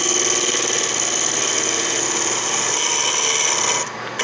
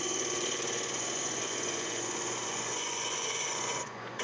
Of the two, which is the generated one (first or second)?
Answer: second